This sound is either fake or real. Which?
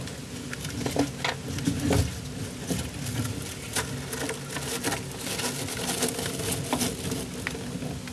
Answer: real